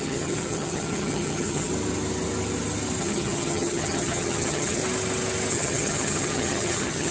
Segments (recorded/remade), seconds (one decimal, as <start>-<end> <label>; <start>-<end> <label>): 0.0-1.7 remade; 1.7-3.0 recorded; 3.0-4.8 remade; 4.8-5.5 recorded; 5.5-7.1 remade